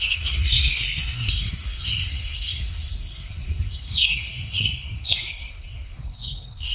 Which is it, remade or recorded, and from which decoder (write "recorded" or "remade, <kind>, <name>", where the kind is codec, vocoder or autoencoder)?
remade, codec, SNAC